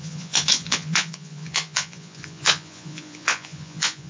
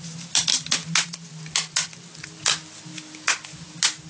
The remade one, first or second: first